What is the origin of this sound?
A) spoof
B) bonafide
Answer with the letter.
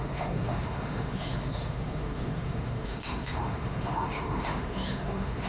A